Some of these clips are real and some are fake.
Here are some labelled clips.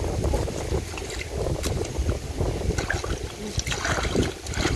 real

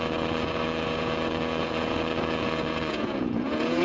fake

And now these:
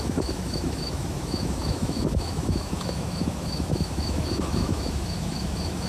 fake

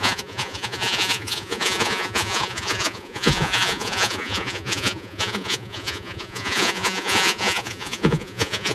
fake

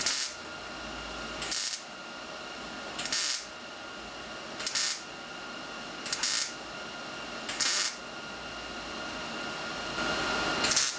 real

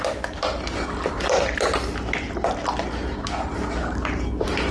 real